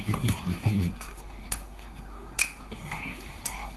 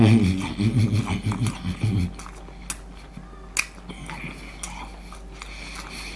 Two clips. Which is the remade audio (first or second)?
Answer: first